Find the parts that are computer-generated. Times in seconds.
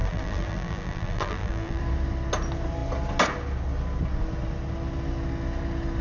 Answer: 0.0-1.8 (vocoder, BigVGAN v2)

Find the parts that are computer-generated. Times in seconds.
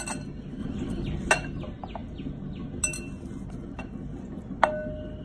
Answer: 0.6-1.3 (vocoder, BigVGAN v2)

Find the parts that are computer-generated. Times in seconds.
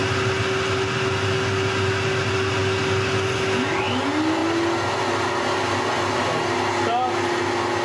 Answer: none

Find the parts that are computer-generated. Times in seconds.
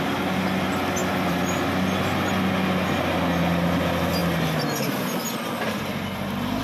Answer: 1.0-1.7 (vocoder, BigVGAN v2)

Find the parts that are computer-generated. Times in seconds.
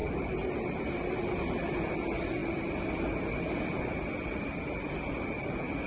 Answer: none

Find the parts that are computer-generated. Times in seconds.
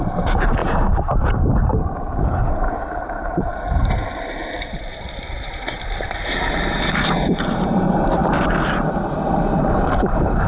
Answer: 0.0-8.2 (vocoder, BigVGAN v2); 9.5-10.5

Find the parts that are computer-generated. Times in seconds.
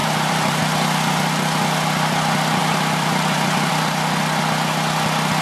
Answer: 0.0-0.6 (vocoder, BigVGAN v2); 2.6-3.7